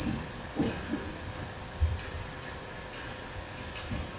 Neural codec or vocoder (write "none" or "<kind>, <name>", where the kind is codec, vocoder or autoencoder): none